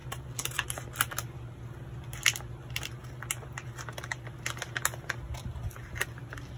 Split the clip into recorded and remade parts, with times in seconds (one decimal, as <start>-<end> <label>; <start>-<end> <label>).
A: 0.0-6.6 recorded